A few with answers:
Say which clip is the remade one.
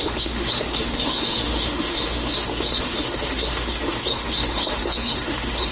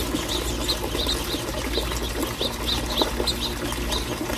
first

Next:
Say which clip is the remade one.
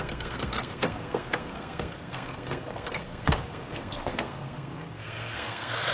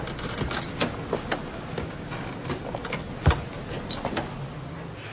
first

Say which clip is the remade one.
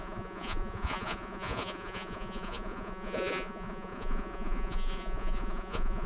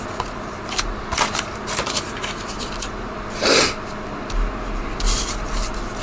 first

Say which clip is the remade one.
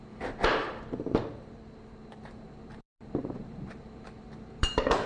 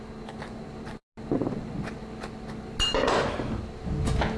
first